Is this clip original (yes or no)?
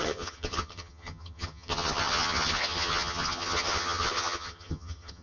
no